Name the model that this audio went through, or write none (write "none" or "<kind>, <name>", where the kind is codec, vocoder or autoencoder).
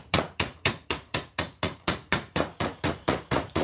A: vocoder, Vocos